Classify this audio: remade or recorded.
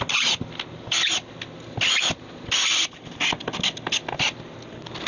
recorded